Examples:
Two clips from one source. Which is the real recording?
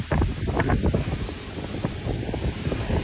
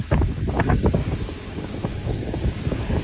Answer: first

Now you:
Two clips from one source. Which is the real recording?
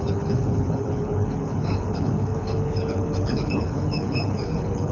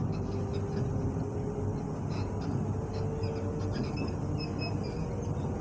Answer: second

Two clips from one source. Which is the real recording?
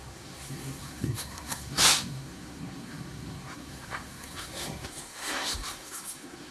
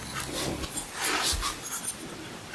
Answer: second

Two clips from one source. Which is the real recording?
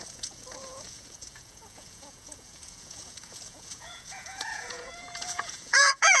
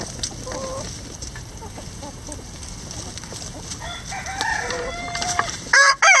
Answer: second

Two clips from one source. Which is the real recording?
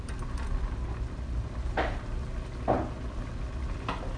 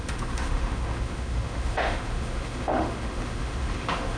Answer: first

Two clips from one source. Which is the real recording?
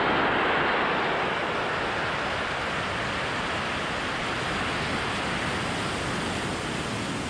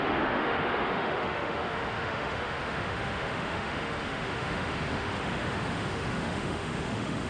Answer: first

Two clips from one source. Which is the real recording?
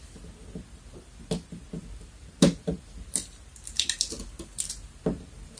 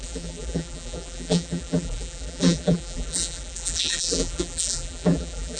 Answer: first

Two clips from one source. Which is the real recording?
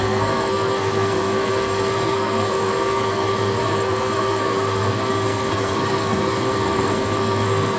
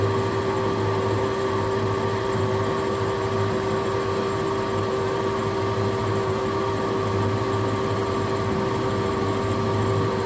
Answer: second